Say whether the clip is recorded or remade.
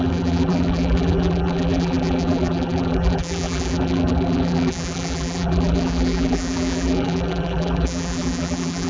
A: remade